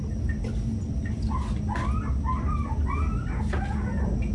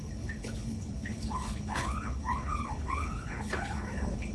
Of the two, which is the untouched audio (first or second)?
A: first